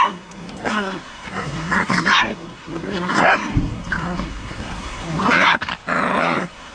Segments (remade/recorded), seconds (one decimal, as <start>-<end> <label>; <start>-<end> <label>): 0.0-5.7 remade; 5.7-6.2 recorded; 6.2-6.7 remade